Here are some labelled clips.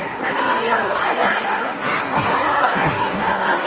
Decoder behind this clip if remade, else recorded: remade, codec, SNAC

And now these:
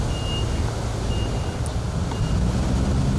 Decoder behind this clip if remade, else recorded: recorded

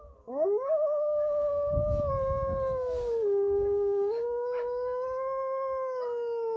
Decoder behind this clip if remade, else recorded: remade, codec, DAC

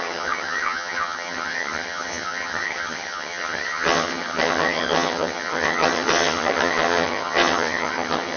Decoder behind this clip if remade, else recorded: remade, vocoder, HiFi-GAN